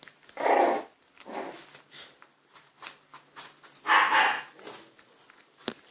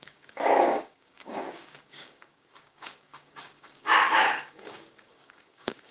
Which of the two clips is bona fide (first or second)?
first